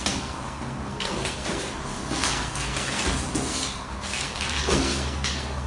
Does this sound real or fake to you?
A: fake